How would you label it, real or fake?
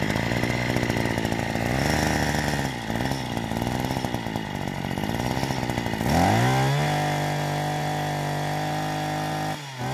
real